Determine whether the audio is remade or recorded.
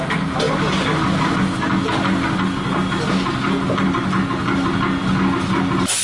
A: recorded